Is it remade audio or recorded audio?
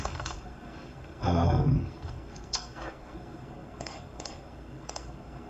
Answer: remade